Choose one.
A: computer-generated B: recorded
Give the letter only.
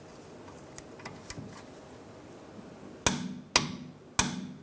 B